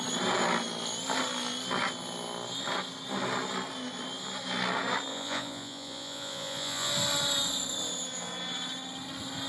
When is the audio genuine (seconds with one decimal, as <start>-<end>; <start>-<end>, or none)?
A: 0.0-5.1; 6.9-9.5